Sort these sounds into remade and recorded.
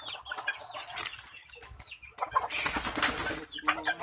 recorded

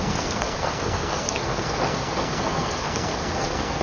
remade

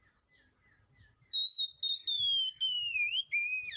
recorded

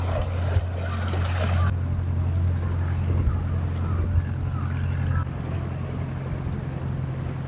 recorded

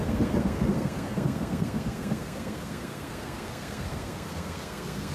remade